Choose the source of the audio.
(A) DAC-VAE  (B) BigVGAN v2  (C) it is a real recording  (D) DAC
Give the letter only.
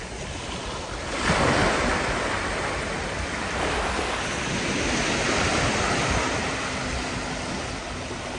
C